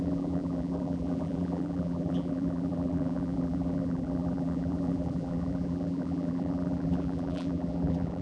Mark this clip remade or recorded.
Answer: remade